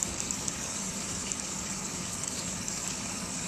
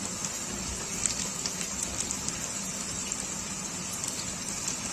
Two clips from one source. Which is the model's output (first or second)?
first